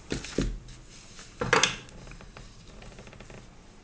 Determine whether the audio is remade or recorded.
recorded